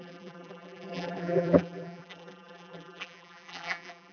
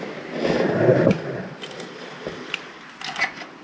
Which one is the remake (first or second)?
first